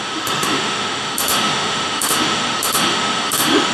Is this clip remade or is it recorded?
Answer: remade